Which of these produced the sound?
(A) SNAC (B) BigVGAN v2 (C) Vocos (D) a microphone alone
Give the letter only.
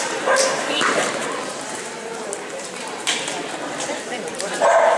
B